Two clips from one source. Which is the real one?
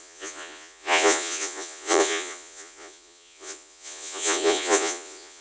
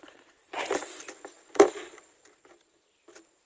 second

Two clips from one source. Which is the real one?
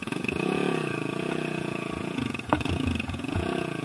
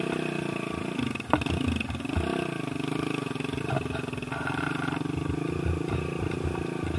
second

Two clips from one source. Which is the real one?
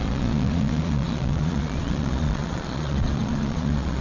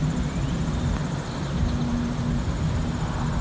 second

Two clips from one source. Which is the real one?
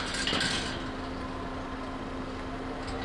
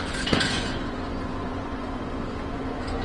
first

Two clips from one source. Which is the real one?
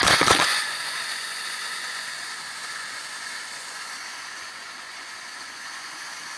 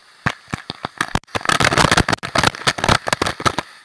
second